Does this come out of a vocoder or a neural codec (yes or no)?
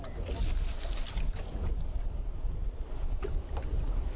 no